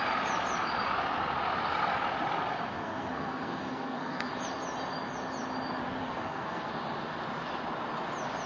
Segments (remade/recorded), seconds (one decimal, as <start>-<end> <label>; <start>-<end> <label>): 0.0-2.7 recorded; 2.7-4.3 remade; 4.3-6.0 recorded; 6.0-6.7 remade; 6.7-8.5 recorded